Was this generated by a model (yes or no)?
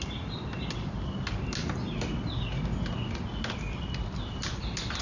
no